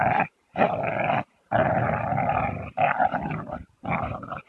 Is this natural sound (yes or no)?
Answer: yes